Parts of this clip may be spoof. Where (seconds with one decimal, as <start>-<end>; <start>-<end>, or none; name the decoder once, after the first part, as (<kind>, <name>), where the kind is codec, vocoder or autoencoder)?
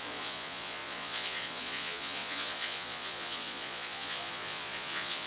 0.0-5.3 (vocoder, Vocos)